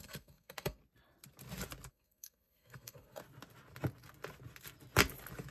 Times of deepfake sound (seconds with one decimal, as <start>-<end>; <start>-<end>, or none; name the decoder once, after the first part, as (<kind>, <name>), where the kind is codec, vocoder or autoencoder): 0.0-0.8 (codec, SNAC); 1.9-3.2